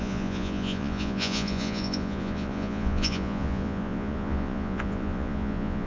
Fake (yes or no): yes